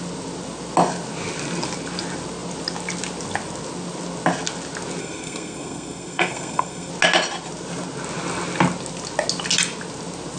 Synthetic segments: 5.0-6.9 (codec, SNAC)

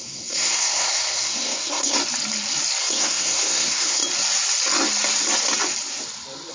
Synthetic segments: 0.0-2.0 (codec, SNAC); 2.8-4.0

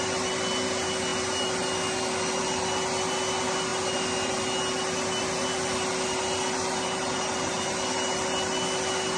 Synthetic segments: none

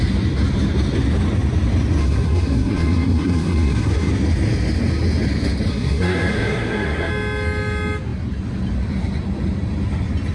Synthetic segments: 2.0-4.1 (codec, SNAC); 5.7-7.1

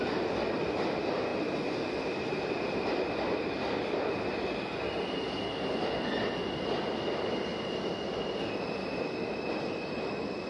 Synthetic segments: none